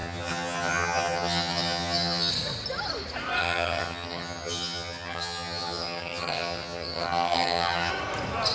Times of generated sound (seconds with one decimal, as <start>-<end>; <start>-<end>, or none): 0.0-2.3; 3.4-7.9